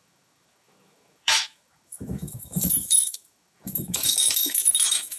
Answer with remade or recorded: remade